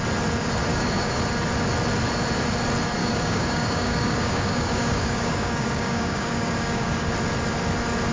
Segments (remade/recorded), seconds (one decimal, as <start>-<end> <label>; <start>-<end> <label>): 0.0-0.7 recorded; 0.7-1.2 remade; 1.2-3.0 recorded; 3.0-7.1 remade; 7.1-8.1 recorded